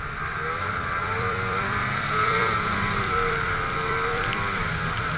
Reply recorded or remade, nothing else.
remade